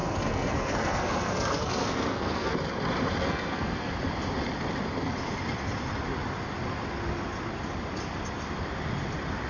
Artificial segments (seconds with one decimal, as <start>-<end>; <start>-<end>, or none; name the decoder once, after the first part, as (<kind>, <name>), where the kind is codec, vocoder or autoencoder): 0.0-2.5 (codec, SNAC); 3.2-3.9